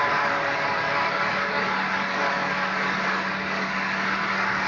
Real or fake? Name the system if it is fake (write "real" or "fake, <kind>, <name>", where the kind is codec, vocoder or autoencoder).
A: fake, codec, DAC